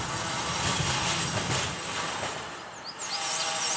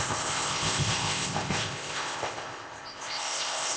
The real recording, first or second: first